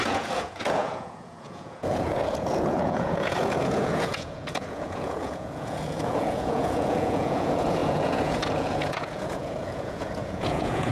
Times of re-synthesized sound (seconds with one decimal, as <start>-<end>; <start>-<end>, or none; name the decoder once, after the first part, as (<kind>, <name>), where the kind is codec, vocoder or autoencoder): 0.0-10.9 (vocoder, Vocos)